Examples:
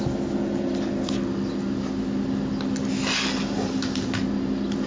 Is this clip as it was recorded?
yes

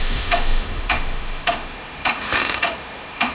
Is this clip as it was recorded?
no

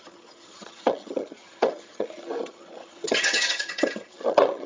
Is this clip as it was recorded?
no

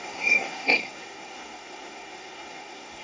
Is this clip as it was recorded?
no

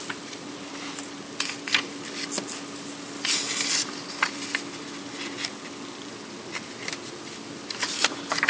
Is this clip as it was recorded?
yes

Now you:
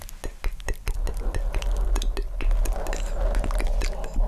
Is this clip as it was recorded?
yes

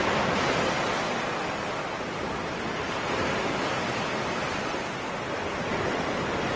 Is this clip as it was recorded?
yes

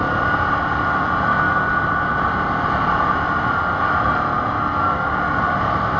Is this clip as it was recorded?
yes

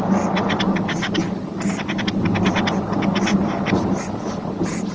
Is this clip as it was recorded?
yes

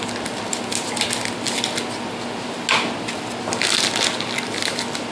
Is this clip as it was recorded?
yes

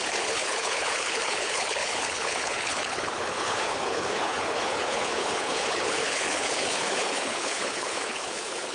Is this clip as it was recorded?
no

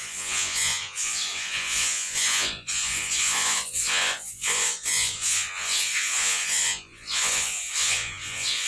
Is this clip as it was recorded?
no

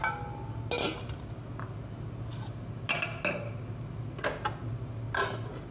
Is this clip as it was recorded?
yes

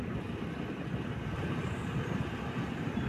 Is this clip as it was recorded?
no